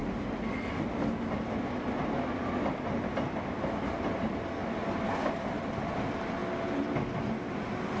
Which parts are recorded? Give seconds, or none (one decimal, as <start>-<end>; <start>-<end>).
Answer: 0.0-3.6; 6.4-7.5